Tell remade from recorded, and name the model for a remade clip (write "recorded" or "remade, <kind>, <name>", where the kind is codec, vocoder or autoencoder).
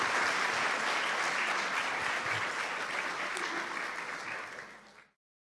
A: recorded